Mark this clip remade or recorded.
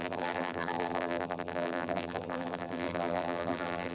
remade